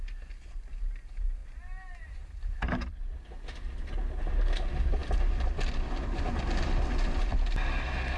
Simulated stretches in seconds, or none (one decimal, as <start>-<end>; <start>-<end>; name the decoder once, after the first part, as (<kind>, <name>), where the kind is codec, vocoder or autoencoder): 1.4-2.9 (vocoder, BigVGAN v2)